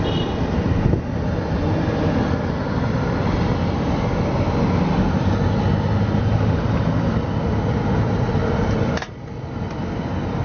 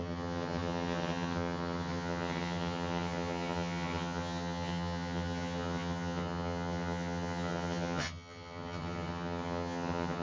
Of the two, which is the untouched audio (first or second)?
first